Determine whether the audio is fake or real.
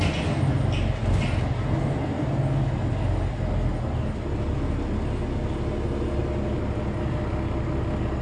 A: real